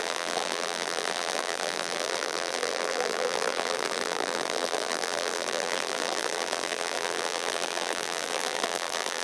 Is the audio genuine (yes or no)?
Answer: no